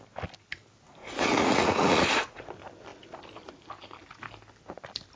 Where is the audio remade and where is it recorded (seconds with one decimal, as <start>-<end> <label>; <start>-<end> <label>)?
0.0-1.0 recorded; 1.0-2.5 remade; 2.5-5.2 recorded

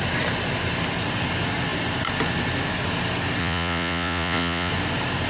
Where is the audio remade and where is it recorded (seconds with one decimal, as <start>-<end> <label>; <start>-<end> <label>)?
0.0-3.4 recorded; 3.4-4.7 remade; 4.7-5.3 recorded

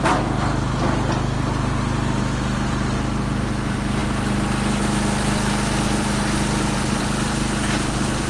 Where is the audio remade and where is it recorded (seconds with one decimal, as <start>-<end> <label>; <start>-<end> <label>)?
0.0-8.3 recorded

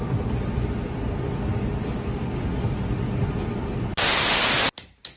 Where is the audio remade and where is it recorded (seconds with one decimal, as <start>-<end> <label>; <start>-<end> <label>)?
0.0-5.2 recorded